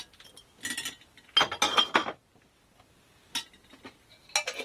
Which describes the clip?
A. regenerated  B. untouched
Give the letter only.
B